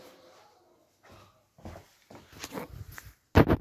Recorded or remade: recorded